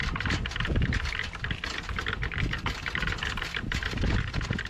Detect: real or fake real